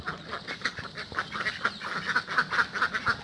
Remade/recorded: recorded